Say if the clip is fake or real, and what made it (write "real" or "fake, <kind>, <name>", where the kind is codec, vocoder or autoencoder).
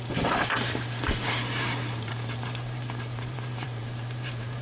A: fake, vocoder, BigVGAN v2